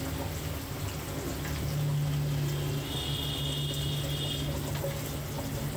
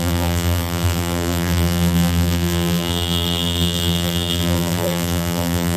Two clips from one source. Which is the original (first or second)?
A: first